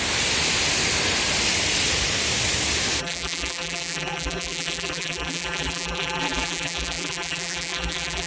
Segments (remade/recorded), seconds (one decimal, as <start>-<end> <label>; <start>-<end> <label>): 0.0-3.0 recorded; 3.0-8.3 remade